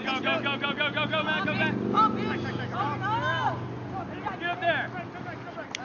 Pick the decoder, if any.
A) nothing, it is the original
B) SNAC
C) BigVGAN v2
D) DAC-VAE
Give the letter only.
A